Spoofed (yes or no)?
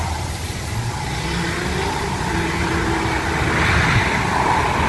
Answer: no